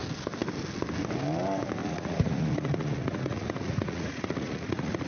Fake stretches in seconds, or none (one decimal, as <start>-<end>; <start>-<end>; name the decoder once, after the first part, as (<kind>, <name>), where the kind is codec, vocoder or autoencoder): 1.8-5.1 (vocoder, Vocos)